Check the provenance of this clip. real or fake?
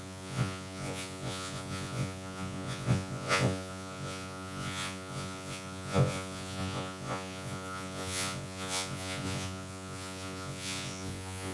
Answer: fake